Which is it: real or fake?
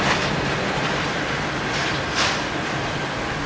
real